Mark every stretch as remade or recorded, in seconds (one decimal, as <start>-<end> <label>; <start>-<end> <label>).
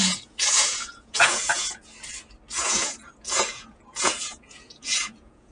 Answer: 0.0-1.8 remade; 1.8-2.6 recorded; 2.6-5.5 remade